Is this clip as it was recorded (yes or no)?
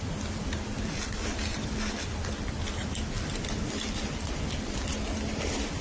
yes